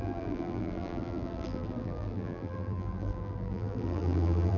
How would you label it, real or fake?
fake